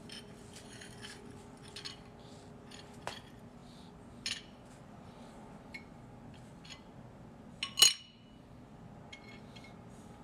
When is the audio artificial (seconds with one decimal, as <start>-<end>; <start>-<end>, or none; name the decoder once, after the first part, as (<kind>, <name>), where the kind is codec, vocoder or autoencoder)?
none